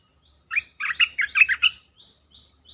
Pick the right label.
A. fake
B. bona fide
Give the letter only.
A